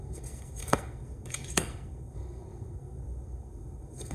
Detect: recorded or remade remade